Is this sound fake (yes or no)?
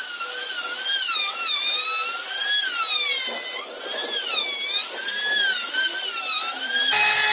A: no